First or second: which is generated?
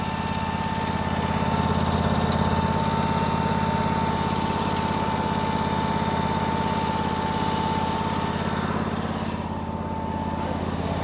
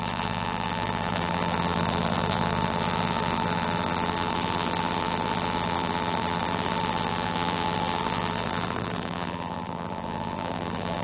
second